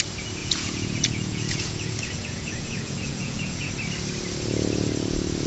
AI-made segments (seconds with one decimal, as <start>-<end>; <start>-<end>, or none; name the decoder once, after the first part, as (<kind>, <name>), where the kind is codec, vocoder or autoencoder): 0.4-3.7 (vocoder, Vocos)